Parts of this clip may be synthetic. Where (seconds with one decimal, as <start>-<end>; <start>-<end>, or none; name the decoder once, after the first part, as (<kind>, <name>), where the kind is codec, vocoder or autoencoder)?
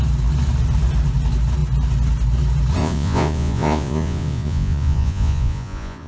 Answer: 2.8-6.1 (vocoder, Vocos)